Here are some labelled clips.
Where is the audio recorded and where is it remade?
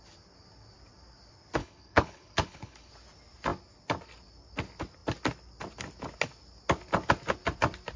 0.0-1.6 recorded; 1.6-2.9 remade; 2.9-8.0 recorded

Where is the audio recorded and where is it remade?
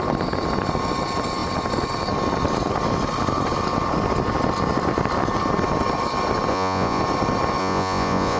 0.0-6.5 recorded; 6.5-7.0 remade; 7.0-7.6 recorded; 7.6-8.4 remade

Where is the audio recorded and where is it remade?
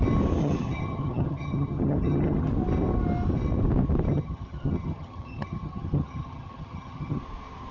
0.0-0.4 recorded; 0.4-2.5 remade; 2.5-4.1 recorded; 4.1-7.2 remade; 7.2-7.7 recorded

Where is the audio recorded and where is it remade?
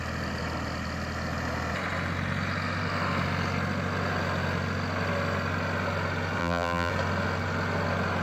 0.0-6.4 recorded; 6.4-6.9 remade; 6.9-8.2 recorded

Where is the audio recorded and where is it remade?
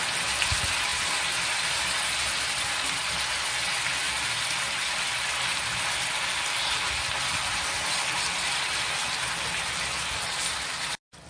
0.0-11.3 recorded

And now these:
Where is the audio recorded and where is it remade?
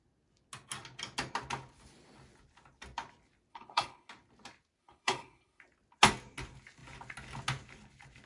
0.0-3.5 recorded; 3.5-4.1 remade; 4.1-4.8 recorded; 4.8-5.6 remade; 5.6-8.3 recorded